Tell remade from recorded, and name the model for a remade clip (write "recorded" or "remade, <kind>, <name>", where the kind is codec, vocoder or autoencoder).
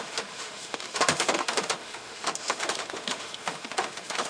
remade, autoencoder, DAC-VAE